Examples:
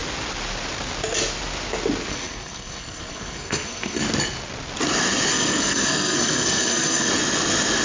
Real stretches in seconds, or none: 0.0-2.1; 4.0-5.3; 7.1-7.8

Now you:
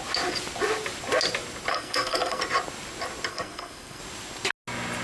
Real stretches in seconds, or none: 0.0-1.7; 2.4-3.3; 4.0-5.0

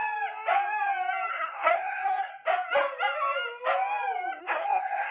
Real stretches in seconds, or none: 0.0-1.3; 2.3-4.4

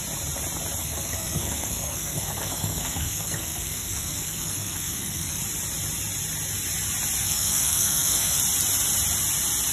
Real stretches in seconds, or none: 0.0-0.8; 5.4-7.2; 8.4-9.7

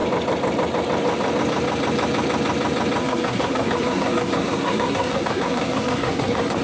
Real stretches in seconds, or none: 0.0-3.0

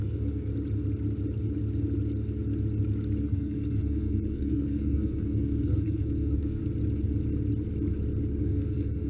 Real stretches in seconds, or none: 0.5-3.2; 6.6-8.4

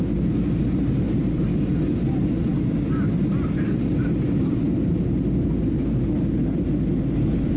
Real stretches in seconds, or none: 0.0-7.6

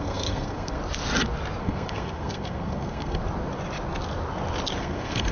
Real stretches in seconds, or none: 0.8-1.6; 3.2-4.8